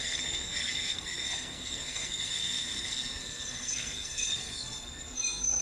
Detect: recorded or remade remade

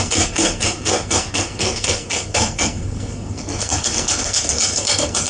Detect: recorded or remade remade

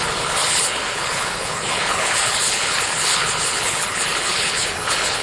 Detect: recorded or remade remade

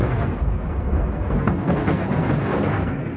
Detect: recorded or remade remade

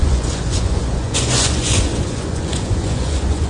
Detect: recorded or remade remade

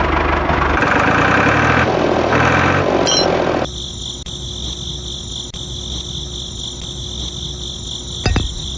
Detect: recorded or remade recorded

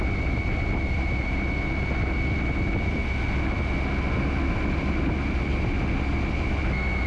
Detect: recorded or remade recorded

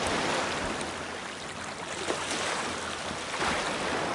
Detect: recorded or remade recorded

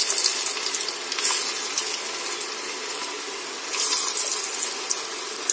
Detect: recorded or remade recorded